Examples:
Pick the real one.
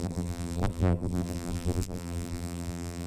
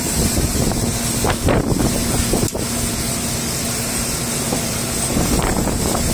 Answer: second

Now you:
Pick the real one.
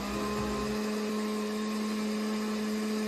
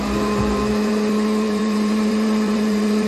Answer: first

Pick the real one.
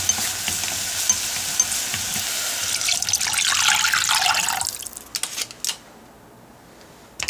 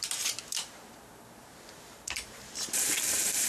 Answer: first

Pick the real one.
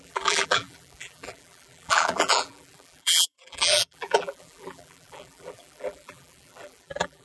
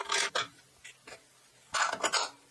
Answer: second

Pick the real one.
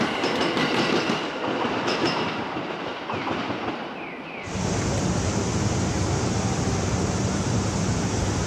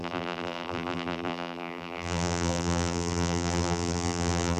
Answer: first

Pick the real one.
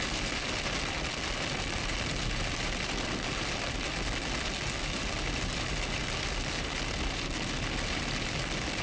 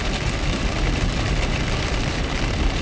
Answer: first